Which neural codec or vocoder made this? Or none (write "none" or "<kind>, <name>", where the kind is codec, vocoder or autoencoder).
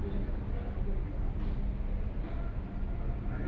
none